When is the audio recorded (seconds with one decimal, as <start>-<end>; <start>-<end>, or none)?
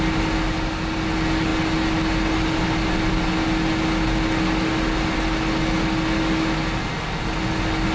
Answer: 0.0-7.9